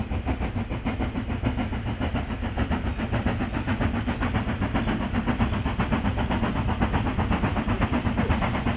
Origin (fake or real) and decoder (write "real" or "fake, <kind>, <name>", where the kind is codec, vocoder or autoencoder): real